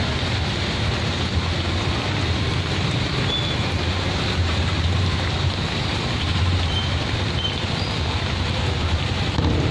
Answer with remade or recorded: recorded